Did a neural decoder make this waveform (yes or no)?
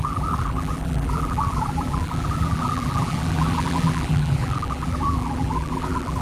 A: yes